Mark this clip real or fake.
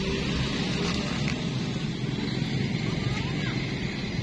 real